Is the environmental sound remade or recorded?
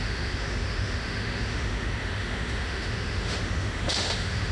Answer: remade